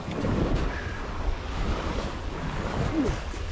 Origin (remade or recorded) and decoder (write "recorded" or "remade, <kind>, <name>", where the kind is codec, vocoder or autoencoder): remade, codec, DAC